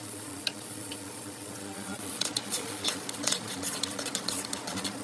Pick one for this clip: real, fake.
fake